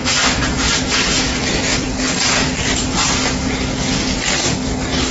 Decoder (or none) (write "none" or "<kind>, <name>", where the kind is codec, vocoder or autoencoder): none